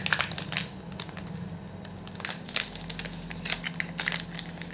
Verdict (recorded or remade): recorded